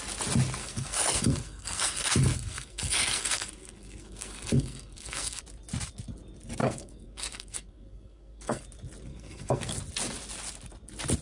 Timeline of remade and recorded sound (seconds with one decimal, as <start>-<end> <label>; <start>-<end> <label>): 0.0-0.6 recorded; 0.6-5.4 remade; 5.4-6.6 recorded; 6.6-8.6 remade; 8.6-9.1 recorded; 9.1-9.8 remade; 9.8-11.2 recorded